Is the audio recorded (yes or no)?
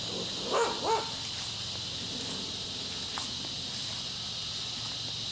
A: yes